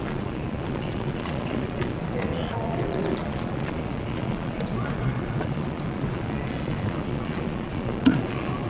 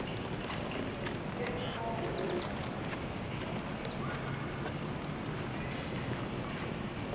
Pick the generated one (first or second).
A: first